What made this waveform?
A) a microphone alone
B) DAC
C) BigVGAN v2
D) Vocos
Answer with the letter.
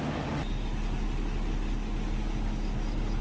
A